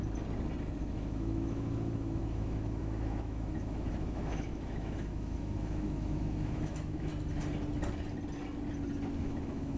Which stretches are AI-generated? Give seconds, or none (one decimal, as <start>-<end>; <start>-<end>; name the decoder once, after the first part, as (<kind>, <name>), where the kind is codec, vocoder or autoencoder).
0.8-7.1 (autoencoder, DAC-VAE); 9.2-9.8